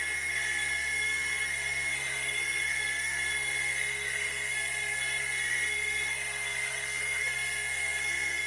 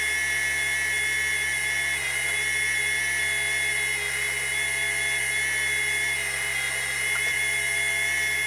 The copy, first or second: first